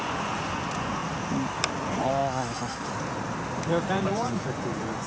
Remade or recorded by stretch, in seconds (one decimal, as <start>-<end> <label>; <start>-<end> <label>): 0.0-1.0 remade; 1.0-1.8 recorded; 1.8-2.2 remade; 2.2-3.9 recorded; 3.9-5.1 remade